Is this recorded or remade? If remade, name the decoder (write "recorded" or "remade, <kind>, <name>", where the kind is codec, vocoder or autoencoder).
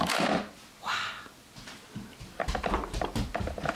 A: recorded